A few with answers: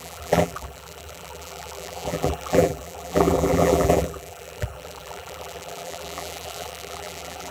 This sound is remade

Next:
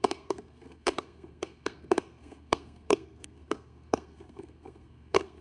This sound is remade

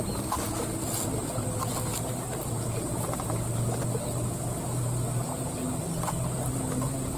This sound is recorded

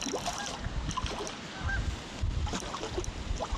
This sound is recorded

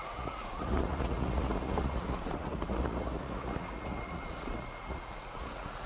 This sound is remade